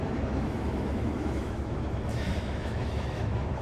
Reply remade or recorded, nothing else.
remade